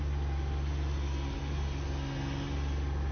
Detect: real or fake real